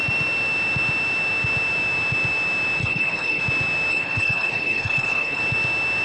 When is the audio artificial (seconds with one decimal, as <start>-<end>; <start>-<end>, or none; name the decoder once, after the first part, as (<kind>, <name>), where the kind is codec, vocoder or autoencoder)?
2.8-3.4 (codec, HILCodec); 3.9-5.4